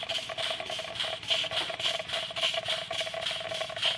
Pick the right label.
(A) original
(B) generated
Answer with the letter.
A